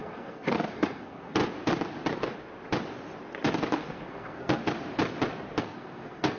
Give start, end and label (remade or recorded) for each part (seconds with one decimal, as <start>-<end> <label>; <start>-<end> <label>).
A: 0.0-1.4 remade; 1.4-3.7 recorded; 3.7-4.6 remade; 4.6-5.6 recorded; 5.6-6.4 remade